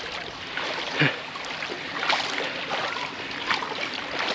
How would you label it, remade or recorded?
recorded